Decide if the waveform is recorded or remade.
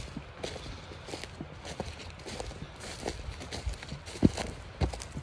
recorded